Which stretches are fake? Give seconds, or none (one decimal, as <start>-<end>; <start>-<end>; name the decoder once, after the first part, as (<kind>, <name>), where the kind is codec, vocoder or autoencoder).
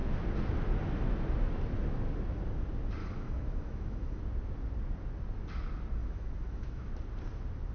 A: 3.0-4.2 (autoencoder, DAC-VAE); 6.0-6.9